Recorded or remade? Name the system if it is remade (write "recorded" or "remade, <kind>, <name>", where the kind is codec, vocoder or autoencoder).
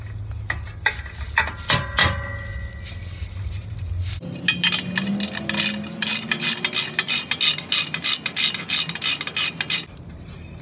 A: recorded